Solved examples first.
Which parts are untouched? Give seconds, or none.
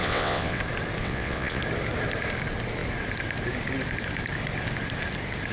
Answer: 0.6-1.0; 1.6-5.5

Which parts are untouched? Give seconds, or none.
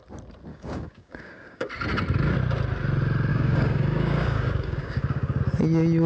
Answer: 0.0-0.5; 1.7-3.3; 5.4-6.1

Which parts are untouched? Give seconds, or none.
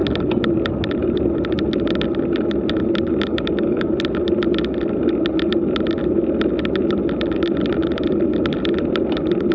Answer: 0.0-3.3; 3.9-9.5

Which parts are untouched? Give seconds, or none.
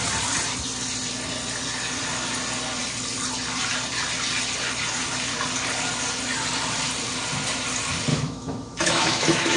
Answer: 0.0-8.1